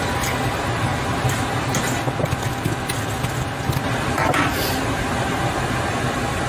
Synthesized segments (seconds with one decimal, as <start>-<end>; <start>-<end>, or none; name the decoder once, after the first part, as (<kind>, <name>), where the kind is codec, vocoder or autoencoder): none